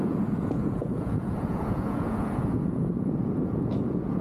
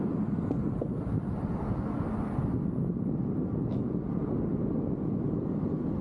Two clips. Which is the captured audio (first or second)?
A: second